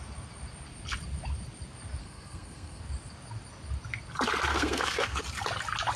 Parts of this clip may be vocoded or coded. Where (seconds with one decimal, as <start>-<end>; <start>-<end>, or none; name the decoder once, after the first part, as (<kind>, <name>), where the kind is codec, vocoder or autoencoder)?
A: 2.0-2.8 (codec, SNAC); 4.5-5.2

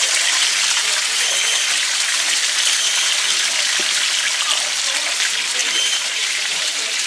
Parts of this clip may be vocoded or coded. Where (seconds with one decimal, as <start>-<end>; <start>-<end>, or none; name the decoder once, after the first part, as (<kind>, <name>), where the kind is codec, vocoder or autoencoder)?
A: 5.6-7.1 (vocoder, BigVGAN v2)

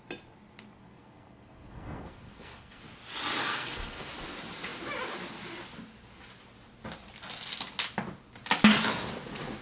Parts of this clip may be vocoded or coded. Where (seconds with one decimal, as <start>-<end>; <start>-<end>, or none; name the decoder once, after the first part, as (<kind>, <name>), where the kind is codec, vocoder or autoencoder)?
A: 0.8-2.8 (codec, SNAC); 3.4-4.1